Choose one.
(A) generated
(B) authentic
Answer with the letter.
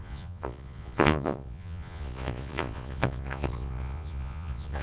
A